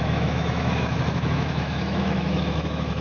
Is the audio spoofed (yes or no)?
yes